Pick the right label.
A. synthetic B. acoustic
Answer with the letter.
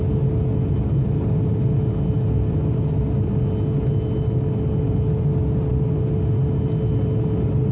B